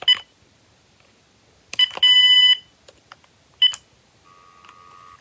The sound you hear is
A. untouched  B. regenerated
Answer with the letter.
A